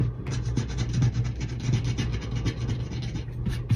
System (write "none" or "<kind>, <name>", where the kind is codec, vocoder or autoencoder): none